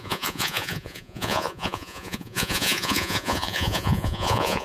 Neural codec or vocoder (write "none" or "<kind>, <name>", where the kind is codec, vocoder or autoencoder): vocoder, Vocos